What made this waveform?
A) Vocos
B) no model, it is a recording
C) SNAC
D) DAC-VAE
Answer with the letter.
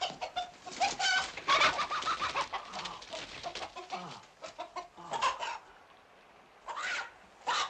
B